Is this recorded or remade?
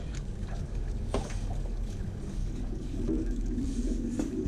remade